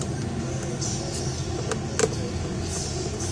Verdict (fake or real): real